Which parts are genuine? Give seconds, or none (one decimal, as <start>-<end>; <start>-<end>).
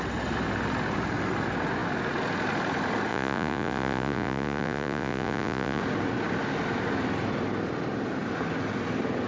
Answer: 0.0-3.1; 5.8-9.3